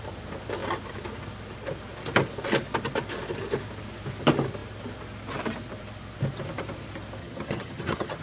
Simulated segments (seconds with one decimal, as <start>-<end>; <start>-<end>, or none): 7.2-8.2

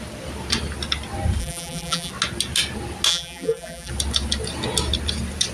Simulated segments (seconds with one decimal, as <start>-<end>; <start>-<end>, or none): 1.4-2.1; 3.1-3.9

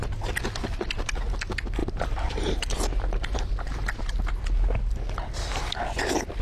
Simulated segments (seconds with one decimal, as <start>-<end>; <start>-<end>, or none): 1.8-3.4

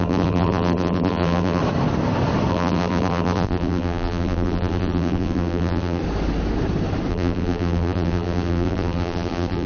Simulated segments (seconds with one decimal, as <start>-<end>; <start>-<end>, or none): 0.0-1.6; 2.5-6.0; 7.1-9.7

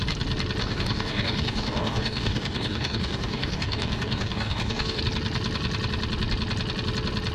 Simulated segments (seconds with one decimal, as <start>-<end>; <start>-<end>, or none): 0.6-5.0